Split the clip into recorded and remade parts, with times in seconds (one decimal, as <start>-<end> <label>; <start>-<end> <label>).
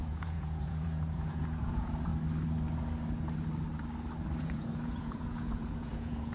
0.0-2.1 remade; 2.1-4.4 recorded; 4.4-6.3 remade